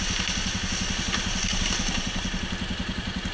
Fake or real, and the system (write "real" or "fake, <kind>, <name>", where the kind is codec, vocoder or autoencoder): real